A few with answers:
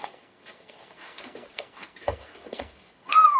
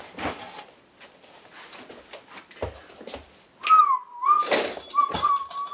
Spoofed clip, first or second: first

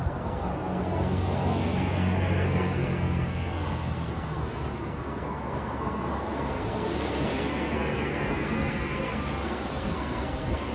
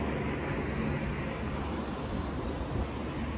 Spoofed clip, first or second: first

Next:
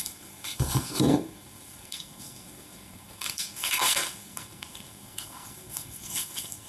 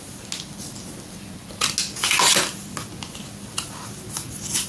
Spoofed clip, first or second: first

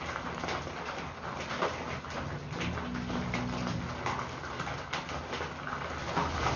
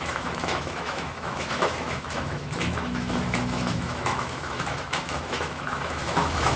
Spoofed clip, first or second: second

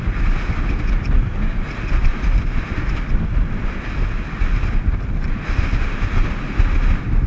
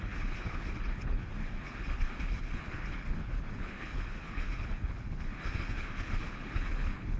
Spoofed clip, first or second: second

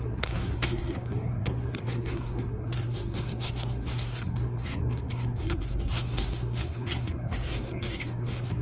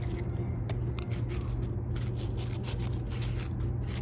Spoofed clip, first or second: first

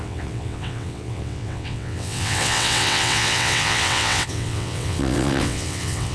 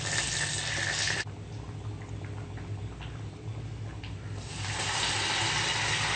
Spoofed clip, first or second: first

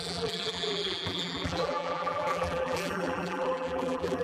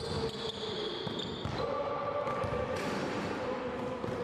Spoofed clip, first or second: first